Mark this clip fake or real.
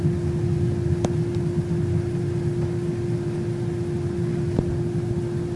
real